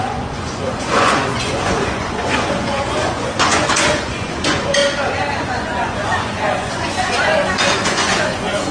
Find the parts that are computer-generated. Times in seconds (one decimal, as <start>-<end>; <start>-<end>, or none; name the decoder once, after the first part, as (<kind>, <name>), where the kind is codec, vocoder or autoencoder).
0.0-4.8 (vocoder, Vocos); 5.4-8.7